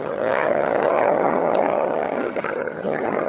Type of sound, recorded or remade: remade